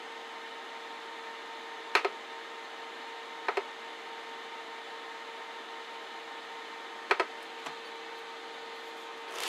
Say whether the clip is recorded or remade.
recorded